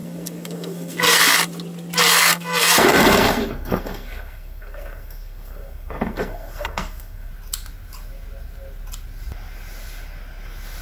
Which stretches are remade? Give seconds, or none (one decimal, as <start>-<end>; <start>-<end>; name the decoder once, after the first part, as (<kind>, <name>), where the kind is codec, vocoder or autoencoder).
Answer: 0.0-1.2 (codec, SNAC); 2.1-7.3